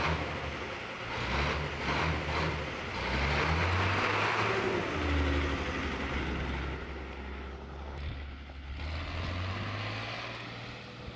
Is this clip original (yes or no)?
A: yes